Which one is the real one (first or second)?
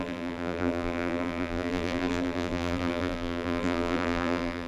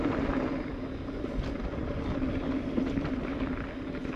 second